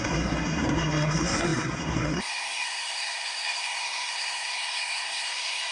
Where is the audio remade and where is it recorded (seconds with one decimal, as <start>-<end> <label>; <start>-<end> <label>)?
0.0-5.7 remade